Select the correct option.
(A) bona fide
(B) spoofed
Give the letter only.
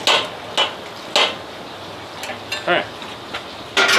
A